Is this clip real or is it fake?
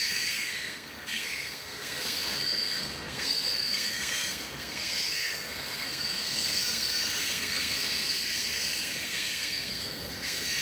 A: fake